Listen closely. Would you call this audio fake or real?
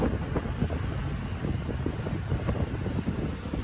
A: real